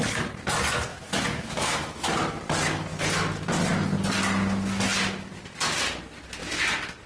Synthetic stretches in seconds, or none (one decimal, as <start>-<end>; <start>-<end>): 0.9-2.1